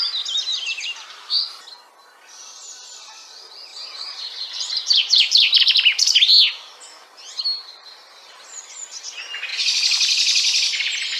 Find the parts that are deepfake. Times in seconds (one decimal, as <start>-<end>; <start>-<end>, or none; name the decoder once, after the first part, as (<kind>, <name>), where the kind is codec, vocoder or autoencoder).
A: 3.7-5.6 (vocoder, BigVGAN v2)